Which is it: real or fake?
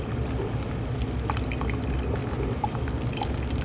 real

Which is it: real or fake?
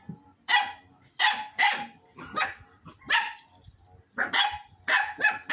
real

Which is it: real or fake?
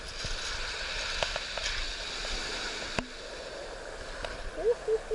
real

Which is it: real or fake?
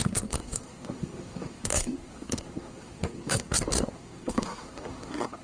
fake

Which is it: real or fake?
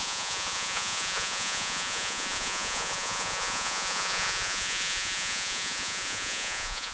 fake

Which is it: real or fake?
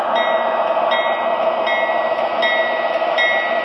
real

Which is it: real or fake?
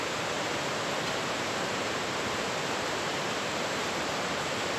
fake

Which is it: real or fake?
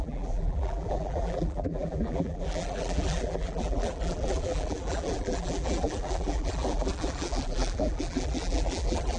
fake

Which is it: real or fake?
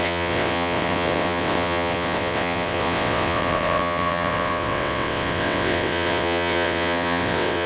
fake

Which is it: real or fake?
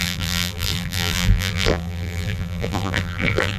fake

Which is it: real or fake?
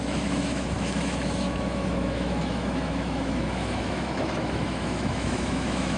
fake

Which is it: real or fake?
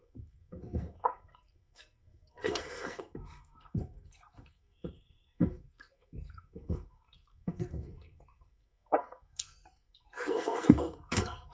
fake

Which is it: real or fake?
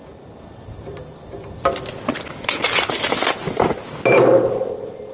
real